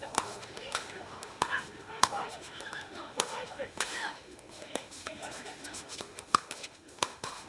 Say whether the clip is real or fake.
fake